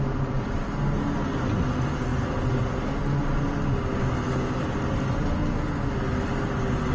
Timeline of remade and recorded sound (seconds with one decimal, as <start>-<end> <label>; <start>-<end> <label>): 0.0-6.9 recorded